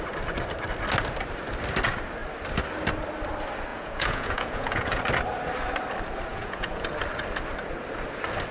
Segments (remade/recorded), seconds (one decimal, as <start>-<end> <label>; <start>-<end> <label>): 0.0-3.7 recorded; 3.7-5.0 remade; 5.0-6.3 recorded; 6.3-6.9 remade; 6.9-8.5 recorded